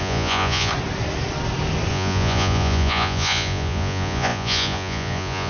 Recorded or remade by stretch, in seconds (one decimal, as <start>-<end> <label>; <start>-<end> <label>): 0.0-0.7 remade; 0.7-1.9 recorded; 1.9-5.5 remade